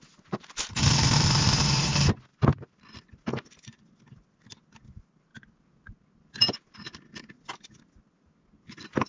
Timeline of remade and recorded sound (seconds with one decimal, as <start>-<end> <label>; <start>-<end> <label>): 0.0-9.1 recorded